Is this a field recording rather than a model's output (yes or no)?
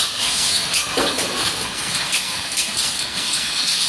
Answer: no